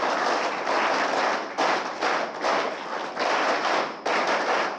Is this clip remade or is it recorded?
recorded